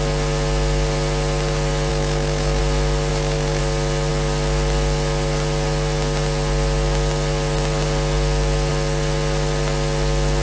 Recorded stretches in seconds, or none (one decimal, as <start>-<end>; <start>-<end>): 0.0-1.9; 2.6-3.1; 3.6-10.4